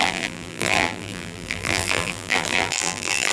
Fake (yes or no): yes